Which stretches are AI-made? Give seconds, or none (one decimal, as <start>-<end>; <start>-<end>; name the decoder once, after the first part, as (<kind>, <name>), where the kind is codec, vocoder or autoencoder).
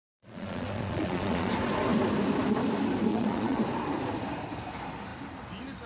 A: 0.0-1.5 (vocoder, Vocos); 3.1-3.6